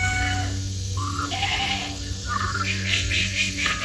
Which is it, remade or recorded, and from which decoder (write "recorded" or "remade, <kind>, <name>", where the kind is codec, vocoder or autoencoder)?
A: remade, codec, SNAC